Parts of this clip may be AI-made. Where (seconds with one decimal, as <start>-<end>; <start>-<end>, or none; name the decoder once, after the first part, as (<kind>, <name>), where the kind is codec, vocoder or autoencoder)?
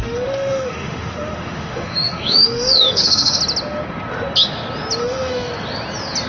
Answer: 0.0-3.4 (autoencoder, DAC-VAE); 5.0-5.5